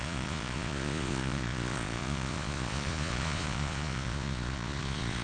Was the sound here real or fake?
fake